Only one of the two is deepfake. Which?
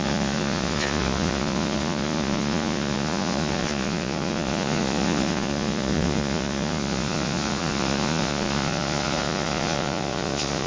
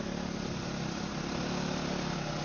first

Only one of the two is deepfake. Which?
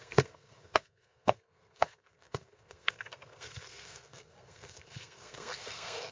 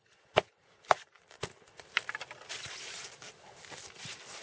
first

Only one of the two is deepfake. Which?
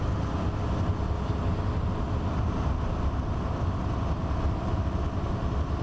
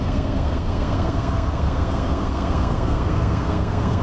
second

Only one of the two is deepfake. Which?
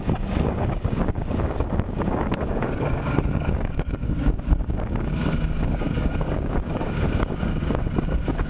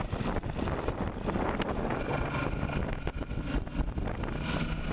first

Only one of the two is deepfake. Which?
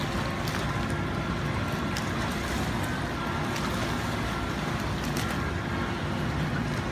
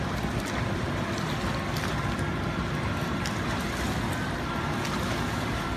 second